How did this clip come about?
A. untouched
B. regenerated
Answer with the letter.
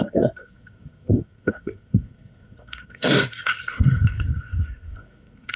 B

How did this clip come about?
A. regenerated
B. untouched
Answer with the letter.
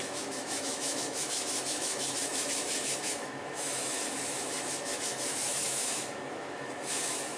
A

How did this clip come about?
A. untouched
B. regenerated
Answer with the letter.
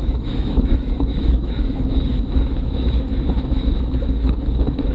B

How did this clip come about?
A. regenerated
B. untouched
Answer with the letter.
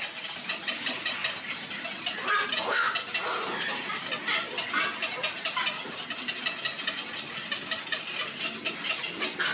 B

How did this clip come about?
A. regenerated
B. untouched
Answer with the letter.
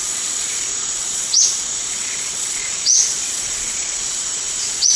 A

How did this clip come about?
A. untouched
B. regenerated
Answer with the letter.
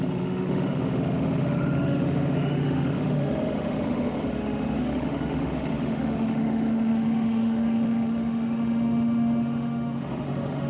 B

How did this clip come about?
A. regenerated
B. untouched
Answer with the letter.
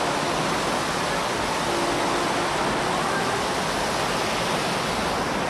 B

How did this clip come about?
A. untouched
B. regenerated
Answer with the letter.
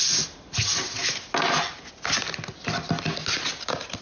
A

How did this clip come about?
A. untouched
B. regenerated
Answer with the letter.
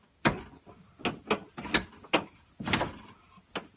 A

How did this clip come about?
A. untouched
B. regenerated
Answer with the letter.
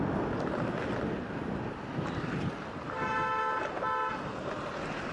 A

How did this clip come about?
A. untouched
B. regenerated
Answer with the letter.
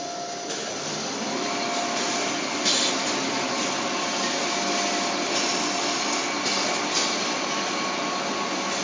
A